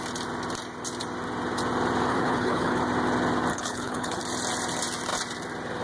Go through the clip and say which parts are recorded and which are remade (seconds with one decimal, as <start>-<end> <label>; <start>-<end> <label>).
0.0-2.1 recorded; 2.1-2.8 remade; 2.8-3.5 recorded; 3.5-4.2 remade; 4.2-5.8 recorded